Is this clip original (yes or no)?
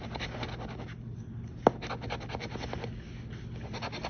yes